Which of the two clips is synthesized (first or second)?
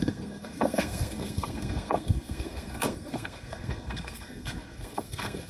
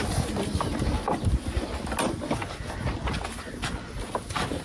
first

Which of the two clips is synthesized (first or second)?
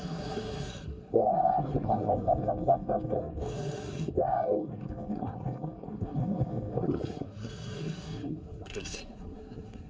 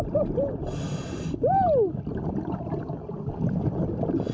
first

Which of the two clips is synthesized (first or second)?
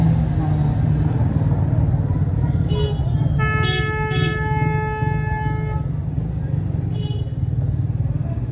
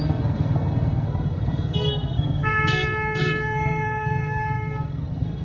second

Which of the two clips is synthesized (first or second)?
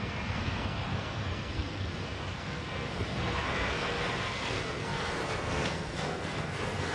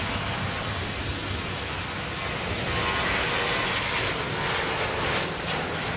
first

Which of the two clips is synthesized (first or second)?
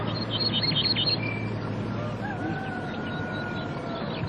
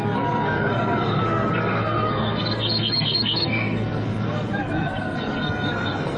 second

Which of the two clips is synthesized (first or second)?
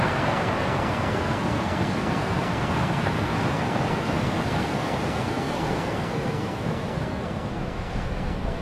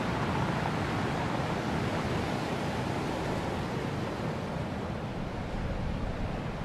first